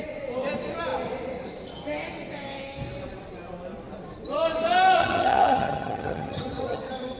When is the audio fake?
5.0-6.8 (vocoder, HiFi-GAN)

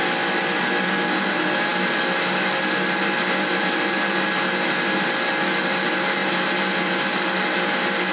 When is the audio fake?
none

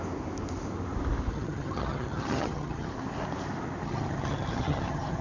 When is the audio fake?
1.3-2.9 (vocoder, HiFi-GAN); 3.8-5.2

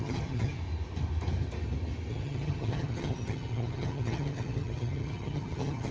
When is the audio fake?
0.0-0.6 (vocoder, HiFi-GAN); 2.1-5.9

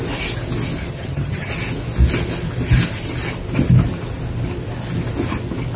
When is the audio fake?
0.9-1.5 (vocoder, HiFi-GAN)